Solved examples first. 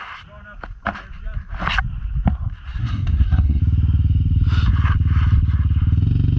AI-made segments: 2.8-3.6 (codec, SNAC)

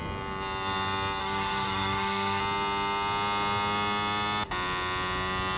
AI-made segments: 1.2-2.4 (codec, SNAC)

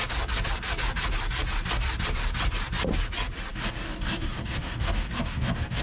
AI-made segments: 3.5-5.8 (codec, DAC)

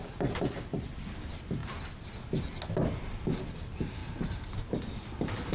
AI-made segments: 1.6-2.2 (vocoder, BigVGAN v2); 4.0-4.5

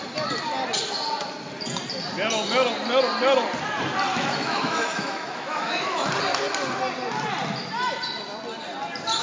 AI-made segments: 4.1-6.1 (autoencoder, DAC-VAE)

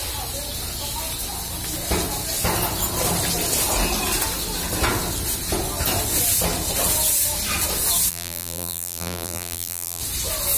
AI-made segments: 8.1-10.0 (vocoder, BigVGAN v2)

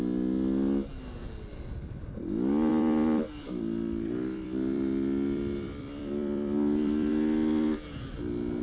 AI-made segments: 2.7-7.1 (vocoder, BigVGAN v2)